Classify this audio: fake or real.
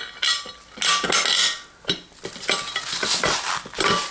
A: real